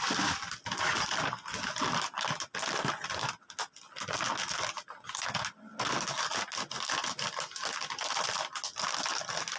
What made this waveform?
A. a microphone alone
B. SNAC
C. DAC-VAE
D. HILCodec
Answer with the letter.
A